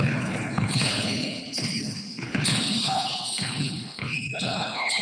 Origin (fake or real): fake